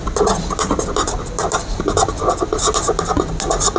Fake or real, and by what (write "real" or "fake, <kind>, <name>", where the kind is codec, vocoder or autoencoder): real